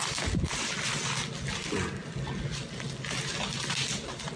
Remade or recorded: recorded